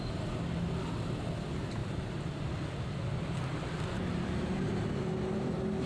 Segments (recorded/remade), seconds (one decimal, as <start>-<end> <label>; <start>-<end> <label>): 0.0-5.9 recorded